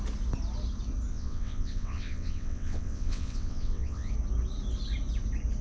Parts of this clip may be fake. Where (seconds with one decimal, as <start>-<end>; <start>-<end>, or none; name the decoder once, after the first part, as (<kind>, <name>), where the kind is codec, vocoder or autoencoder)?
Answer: 1.1-4.1 (vocoder, WaveNeXt)